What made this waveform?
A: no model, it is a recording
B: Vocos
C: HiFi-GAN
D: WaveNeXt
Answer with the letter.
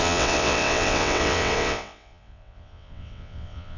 D